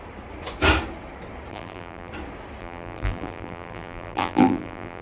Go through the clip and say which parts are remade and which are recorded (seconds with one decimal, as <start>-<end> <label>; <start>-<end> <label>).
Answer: 0.0-1.5 recorded; 1.5-2.1 remade; 2.1-2.6 recorded; 2.6-5.0 remade

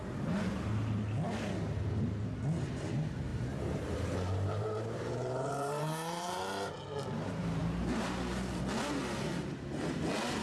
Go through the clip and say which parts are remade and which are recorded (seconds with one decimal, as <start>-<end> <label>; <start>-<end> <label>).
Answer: 0.0-3.3 recorded; 3.3-6.4 remade; 6.4-7.6 recorded; 7.6-8.6 remade; 8.6-10.4 recorded

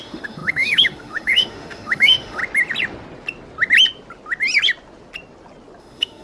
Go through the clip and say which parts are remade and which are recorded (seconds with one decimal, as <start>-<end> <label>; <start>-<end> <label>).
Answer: 0.0-2.4 remade; 2.4-5.8 recorded; 5.8-6.2 remade

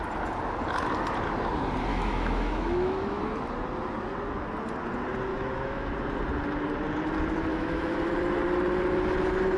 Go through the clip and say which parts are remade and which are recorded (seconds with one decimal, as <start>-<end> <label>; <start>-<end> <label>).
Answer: 0.0-1.9 recorded; 1.9-3.2 remade; 3.2-5.3 recorded; 5.3-5.9 remade; 5.9-7.5 recorded; 7.5-8.1 remade; 8.1-9.6 recorded